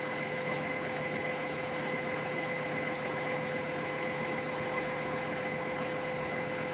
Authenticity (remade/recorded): remade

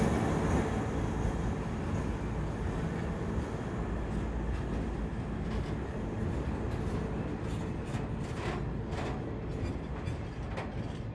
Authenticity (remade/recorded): recorded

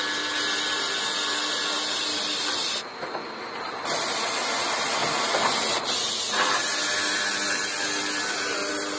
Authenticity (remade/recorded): recorded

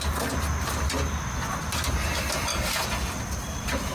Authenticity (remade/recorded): recorded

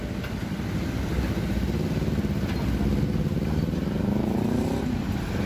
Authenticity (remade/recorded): recorded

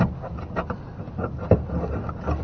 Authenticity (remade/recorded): recorded